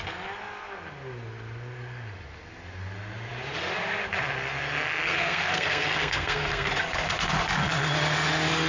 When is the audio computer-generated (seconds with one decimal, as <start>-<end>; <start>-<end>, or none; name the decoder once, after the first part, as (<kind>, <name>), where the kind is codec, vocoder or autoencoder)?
5.0-6.7 (codec, SNAC)